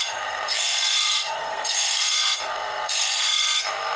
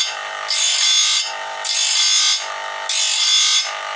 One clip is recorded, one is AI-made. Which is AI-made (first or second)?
first